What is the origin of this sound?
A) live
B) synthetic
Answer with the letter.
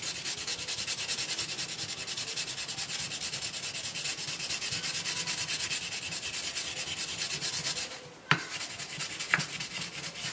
A